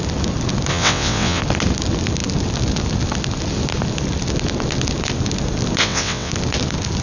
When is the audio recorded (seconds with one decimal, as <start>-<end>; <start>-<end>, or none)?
0.0-0.7; 1.4-5.8; 6.3-7.0